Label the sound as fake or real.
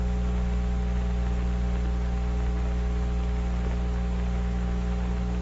real